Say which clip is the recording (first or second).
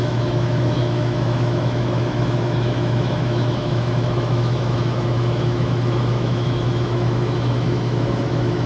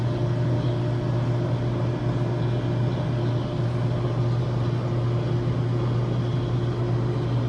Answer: second